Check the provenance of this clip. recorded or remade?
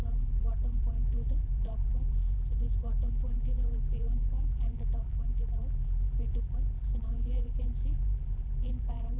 remade